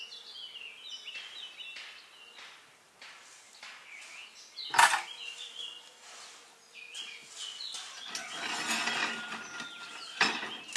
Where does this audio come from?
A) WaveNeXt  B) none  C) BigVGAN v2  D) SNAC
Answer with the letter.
B